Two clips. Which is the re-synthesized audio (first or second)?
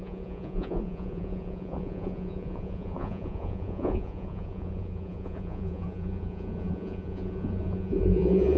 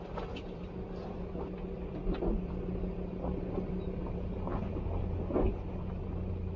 first